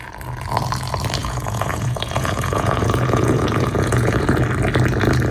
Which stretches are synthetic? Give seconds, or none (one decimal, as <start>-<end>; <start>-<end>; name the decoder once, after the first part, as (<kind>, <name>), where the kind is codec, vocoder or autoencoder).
1.2-4.4 (vocoder, Vocos)